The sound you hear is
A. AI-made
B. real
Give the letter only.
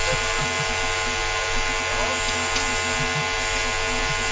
B